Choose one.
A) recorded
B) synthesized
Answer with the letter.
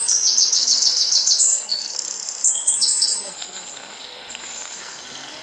B